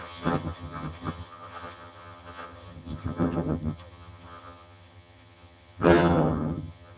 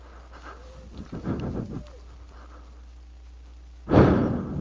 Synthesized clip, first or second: first